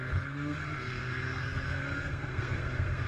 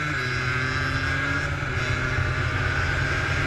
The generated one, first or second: first